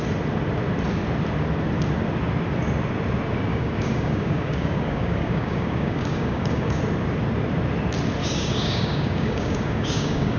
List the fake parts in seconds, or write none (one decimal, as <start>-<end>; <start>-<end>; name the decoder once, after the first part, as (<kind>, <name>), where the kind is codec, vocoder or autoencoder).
3.5-6.8 (codec, DAC); 8.2-10.4